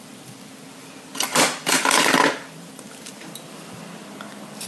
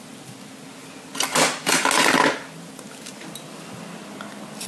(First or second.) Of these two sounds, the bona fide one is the second